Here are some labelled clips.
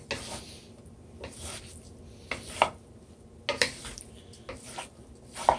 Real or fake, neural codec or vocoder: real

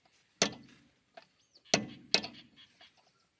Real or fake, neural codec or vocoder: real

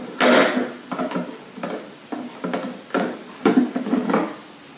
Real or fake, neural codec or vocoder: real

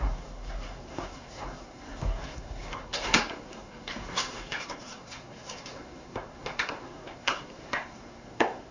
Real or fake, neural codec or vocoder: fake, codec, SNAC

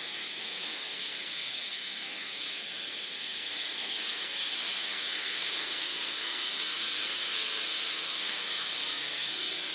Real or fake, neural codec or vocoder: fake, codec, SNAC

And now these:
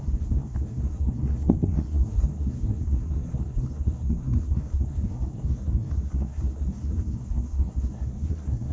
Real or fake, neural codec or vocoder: fake, codec, SNAC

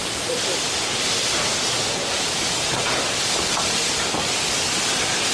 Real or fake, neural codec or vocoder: real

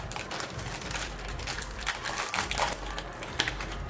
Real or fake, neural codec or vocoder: fake, vocoder, BigVGAN v2